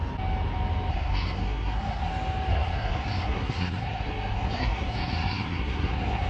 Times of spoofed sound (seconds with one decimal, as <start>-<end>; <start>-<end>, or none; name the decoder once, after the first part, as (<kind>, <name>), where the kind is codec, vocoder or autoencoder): 0.9-2.1 (codec, SNAC); 2.5-6.3